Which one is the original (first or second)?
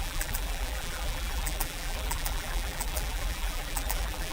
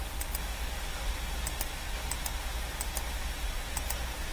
second